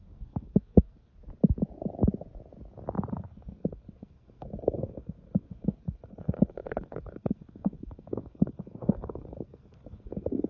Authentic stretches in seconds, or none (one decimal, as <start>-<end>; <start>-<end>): 1.1-3.1